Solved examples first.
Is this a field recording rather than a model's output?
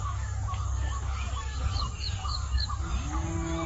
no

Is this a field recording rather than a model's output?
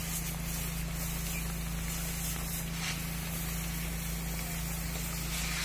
yes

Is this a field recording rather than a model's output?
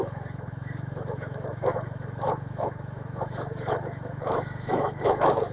no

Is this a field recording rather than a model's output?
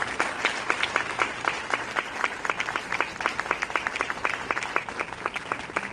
yes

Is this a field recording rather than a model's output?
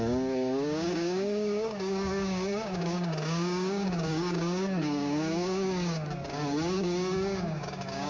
no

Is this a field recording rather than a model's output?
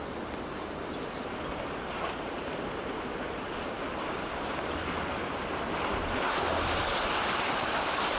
yes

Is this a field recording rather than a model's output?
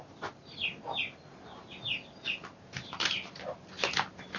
yes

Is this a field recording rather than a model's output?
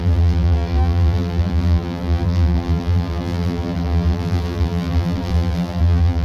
no